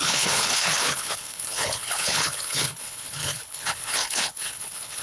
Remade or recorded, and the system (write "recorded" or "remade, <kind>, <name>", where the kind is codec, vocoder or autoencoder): remade, codec, HILCodec